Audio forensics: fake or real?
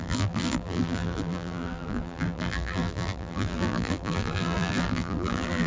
fake